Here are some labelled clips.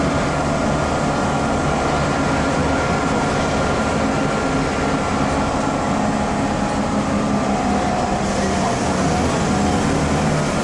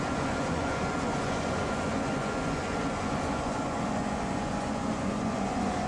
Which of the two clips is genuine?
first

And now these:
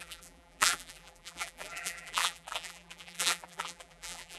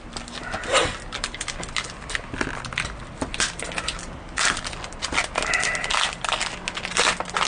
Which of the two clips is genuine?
second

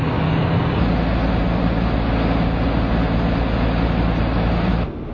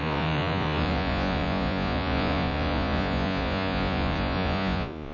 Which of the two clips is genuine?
first